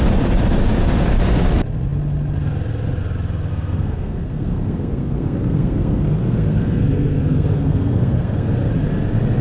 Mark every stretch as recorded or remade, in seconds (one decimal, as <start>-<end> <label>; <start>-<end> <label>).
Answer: 0.0-3.5 recorded; 3.5-8.7 remade; 8.7-9.4 recorded